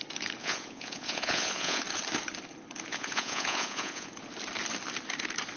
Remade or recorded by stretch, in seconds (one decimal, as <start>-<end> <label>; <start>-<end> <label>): 0.0-0.4 recorded; 0.4-1.8 remade; 1.8-2.9 recorded; 2.9-4.1 remade; 4.1-5.6 recorded

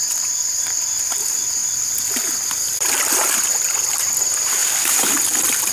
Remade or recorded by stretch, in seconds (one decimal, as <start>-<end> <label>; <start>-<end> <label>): 0.0-1.6 recorded; 1.6-3.5 remade; 3.5-4.6 recorded; 4.6-5.7 remade

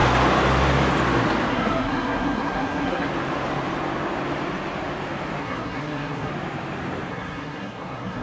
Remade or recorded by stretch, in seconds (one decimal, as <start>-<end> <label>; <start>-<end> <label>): 0.0-1.5 recorded; 1.5-3.1 remade; 3.1-5.4 recorded; 5.4-6.3 remade; 6.3-7.1 recorded; 7.1-8.2 remade

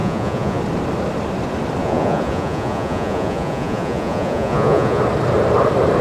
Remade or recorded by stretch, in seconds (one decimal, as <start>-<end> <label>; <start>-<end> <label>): 0.0-0.6 remade; 0.6-1.8 recorded; 1.8-5.0 remade; 5.0-6.0 recorded

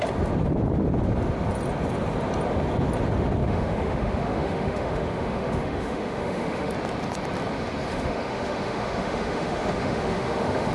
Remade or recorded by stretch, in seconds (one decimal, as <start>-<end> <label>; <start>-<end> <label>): 0.0-3.4 recorded; 3.4-6.7 remade; 6.7-7.9 recorded; 7.9-10.7 remade

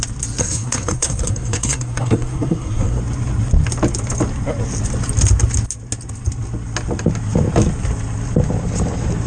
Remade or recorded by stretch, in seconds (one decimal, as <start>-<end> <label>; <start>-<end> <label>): 0.0-0.4 recorded; 0.4-3.0 remade; 3.0-9.3 recorded

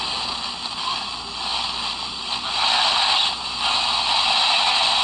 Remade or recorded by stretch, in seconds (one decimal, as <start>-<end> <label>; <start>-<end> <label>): 0.0-1.5 recorded; 1.5-4.5 remade; 4.5-5.0 recorded

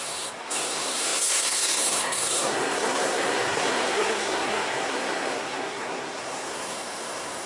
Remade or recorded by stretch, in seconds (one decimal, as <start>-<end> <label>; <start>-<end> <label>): 0.0-7.5 remade